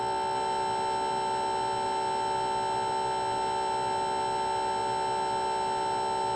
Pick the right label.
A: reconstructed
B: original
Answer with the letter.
B